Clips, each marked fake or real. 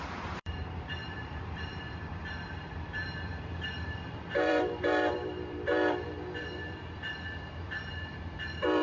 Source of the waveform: fake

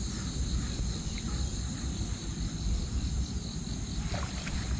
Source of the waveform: real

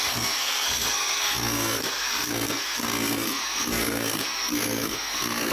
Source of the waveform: fake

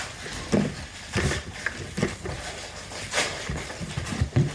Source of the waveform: fake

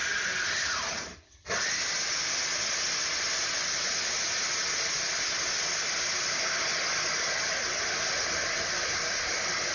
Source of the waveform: real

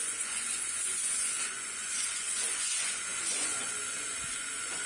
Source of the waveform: fake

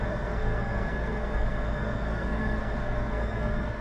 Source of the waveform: fake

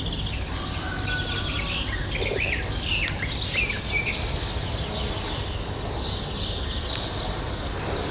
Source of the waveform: real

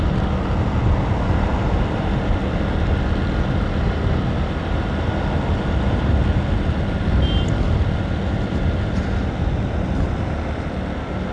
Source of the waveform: real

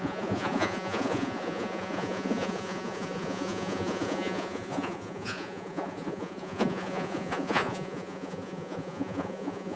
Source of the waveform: fake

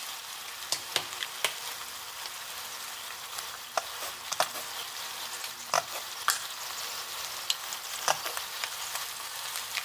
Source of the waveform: real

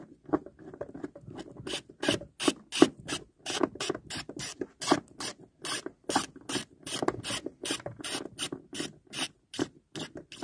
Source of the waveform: real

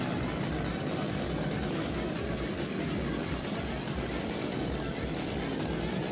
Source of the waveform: real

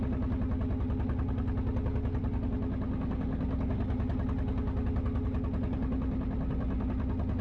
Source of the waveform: real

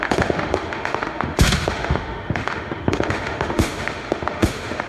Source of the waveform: fake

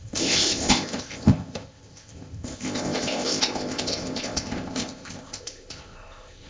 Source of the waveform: fake